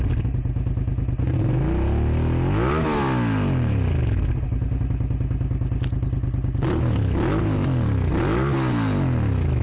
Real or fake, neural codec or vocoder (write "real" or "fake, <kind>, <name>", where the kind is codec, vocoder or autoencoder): real